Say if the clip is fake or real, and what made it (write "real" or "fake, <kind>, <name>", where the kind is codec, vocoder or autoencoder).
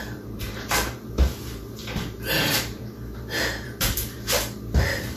fake, vocoder, BigVGAN v2